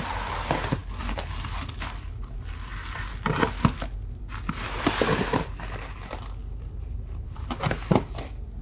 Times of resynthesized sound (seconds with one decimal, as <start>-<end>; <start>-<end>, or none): 6.4-7.6